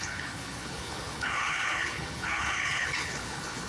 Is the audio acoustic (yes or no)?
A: no